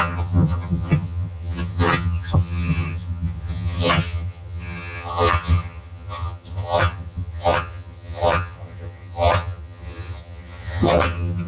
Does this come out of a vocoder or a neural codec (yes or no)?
yes